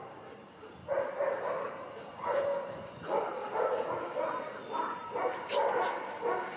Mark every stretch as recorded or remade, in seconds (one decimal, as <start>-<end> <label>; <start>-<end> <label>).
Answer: 0.0-2.1 recorded; 2.1-3.3 remade; 3.3-6.6 recorded